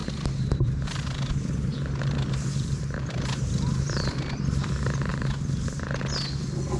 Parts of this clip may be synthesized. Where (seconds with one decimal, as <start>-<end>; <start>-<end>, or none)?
0.0-4.1; 5.1-6.0